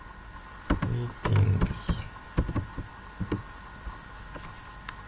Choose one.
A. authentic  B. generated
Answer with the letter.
B